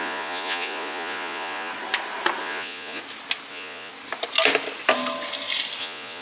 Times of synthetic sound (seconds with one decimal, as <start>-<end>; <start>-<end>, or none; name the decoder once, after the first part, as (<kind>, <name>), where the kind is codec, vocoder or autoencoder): 0.0-1.7 (vocoder, Vocos); 2.4-3.0; 3.5-3.9; 5.8-6.2

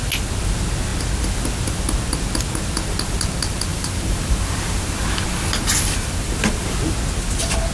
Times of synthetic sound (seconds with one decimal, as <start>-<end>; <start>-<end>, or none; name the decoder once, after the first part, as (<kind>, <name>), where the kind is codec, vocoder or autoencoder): 3.7-6.8 (vocoder, BigVGAN v2)